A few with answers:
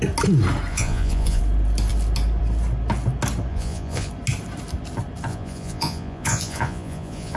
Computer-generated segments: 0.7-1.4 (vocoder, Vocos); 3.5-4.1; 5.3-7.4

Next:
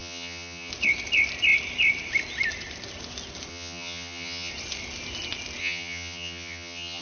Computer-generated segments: 0.0-0.7 (vocoder, HiFi-GAN); 3.5-4.5; 5.6-7.0

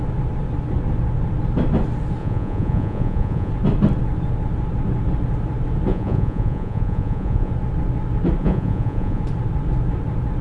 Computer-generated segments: 2.2-3.5 (vocoder, Vocos); 5.9-7.5; 8.4-9.2